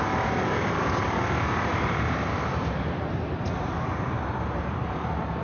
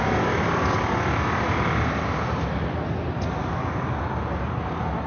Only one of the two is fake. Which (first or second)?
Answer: first